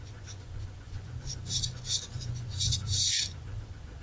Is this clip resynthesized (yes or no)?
yes